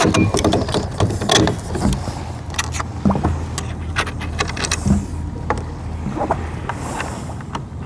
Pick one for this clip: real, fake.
real